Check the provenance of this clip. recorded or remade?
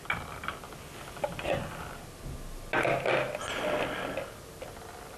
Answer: recorded